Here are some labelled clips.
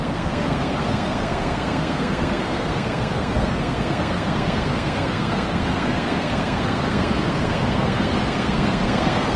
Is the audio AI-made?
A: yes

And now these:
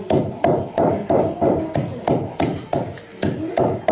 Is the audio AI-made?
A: no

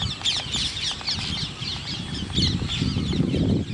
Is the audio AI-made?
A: no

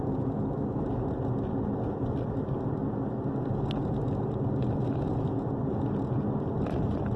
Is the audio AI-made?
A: no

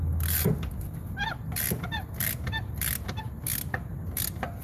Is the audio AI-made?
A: no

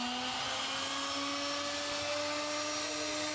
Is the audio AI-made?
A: no